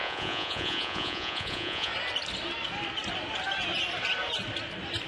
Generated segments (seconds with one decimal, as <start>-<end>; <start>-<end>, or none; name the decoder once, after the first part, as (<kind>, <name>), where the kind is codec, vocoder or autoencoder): 0.0-1.9 (vocoder, Vocos)